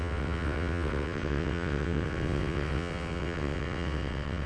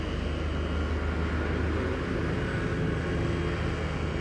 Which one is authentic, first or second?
second